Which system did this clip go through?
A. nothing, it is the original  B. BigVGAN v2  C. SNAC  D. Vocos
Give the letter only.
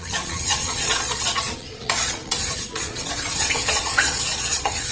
D